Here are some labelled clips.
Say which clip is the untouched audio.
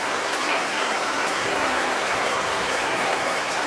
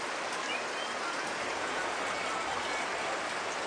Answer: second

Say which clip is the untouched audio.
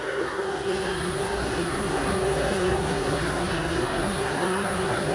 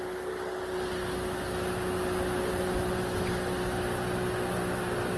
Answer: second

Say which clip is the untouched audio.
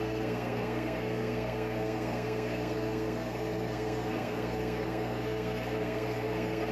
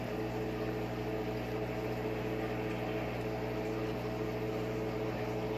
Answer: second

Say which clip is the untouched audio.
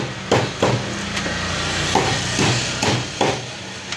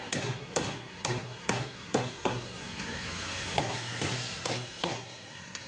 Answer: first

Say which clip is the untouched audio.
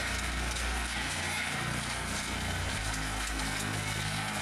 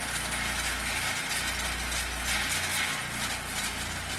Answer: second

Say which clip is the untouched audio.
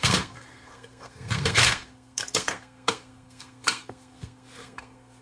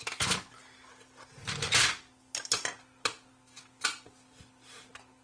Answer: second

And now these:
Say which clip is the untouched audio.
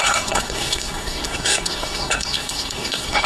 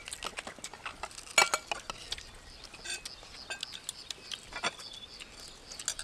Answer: second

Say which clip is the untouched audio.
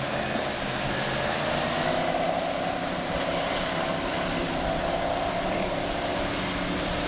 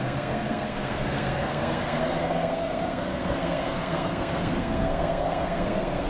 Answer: first